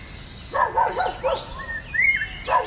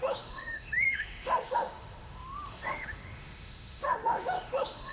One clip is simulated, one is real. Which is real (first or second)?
first